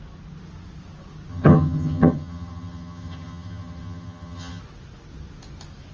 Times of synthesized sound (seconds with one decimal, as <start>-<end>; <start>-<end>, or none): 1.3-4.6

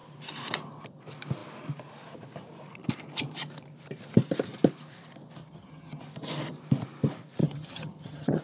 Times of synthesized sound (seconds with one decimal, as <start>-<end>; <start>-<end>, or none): 5.4-6.0; 7.4-8.4

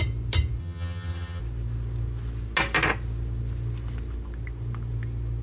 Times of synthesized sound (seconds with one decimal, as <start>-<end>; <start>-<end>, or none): 0.6-1.4